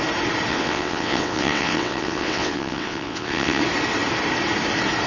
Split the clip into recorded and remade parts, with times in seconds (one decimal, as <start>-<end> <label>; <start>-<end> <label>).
0.0-0.5 recorded; 0.5-3.6 remade; 3.6-5.1 recorded